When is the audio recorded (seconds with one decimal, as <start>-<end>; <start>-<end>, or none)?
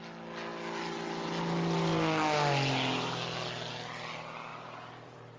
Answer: 0.0-4.5